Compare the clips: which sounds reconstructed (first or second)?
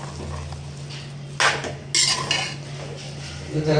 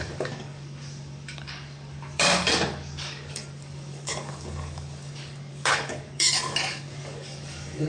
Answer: second